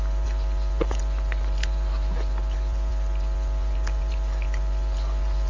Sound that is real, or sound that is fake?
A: real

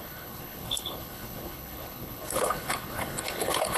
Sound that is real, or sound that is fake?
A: fake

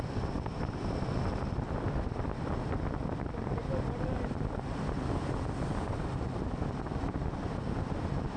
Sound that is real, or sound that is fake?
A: real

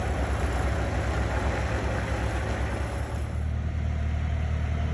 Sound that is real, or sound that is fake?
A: real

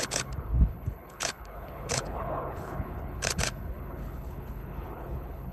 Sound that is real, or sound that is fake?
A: fake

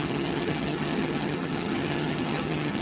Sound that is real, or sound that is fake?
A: fake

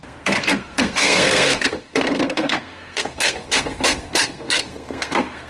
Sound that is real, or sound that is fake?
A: fake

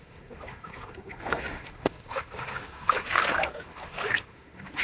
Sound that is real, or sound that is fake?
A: fake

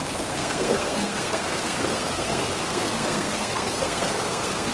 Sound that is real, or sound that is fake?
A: fake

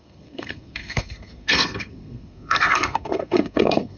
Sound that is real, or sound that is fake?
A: fake